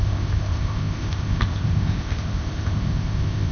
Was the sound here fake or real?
fake